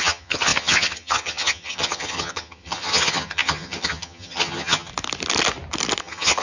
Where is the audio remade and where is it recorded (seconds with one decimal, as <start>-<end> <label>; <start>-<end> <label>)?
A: 0.0-4.9 remade; 4.9-6.0 recorded; 6.0-6.4 remade